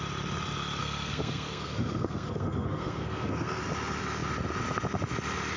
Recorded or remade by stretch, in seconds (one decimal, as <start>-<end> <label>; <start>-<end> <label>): 0.0-0.8 recorded; 0.8-3.6 remade; 3.6-5.6 recorded